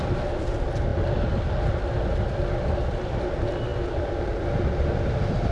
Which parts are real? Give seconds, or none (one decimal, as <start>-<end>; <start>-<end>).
0.0-5.5